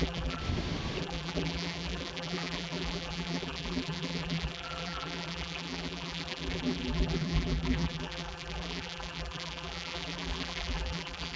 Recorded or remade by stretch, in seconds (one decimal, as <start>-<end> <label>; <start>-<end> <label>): 0.0-0.4 remade; 0.4-1.0 recorded; 1.0-11.4 remade